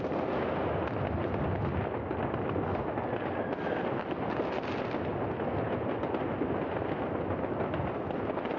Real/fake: real